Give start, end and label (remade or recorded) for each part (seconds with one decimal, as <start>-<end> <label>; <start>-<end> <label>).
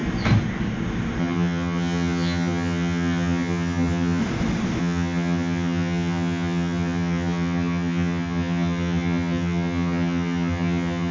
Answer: 0.0-1.2 recorded; 1.2-4.2 remade; 4.2-4.8 recorded; 4.8-11.1 remade